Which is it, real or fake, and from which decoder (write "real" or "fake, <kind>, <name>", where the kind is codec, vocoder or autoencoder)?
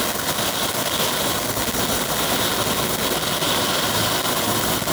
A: real